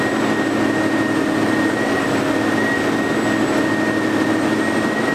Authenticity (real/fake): real